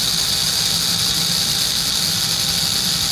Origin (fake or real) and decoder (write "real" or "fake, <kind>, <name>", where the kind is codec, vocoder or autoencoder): real